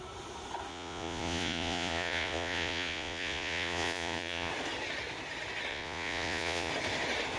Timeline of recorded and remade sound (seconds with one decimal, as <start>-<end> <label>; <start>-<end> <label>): 0.0-0.7 recorded; 0.7-4.5 remade; 4.5-5.7 recorded; 5.7-6.7 remade; 6.7-7.4 recorded